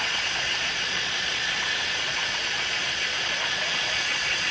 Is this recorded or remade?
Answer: remade